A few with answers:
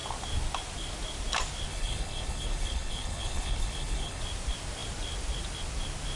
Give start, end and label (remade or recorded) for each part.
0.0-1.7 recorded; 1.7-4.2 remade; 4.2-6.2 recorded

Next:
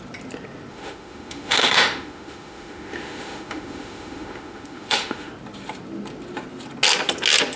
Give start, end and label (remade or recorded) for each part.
0.0-0.7 recorded; 0.7-5.3 remade; 5.3-7.6 recorded

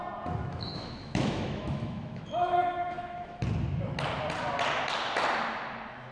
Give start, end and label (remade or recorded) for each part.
0.0-0.5 recorded; 0.5-3.4 remade; 3.4-6.1 recorded

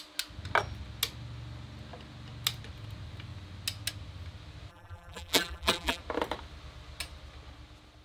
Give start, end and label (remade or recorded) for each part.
0.0-4.7 recorded; 4.7-6.0 remade; 6.0-8.0 recorded

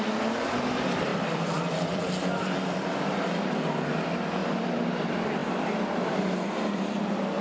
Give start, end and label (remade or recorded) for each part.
0.0-1.1 recorded; 1.1-2.0 remade; 2.0-4.4 recorded; 4.4-5.0 remade; 5.0-5.4 recorded; 5.4-6.9 remade; 6.9-7.4 recorded

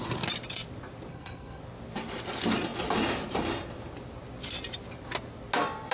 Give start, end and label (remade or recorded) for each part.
0.0-1.1 recorded; 1.1-1.6 remade; 1.6-5.9 recorded

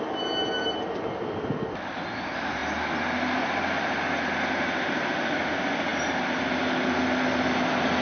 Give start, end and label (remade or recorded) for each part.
0.0-8.0 recorded

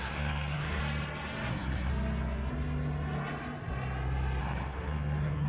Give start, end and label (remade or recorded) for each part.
0.0-0.8 remade; 0.8-1.5 recorded; 1.5-1.9 remade; 1.9-4.4 recorded; 4.4-5.5 remade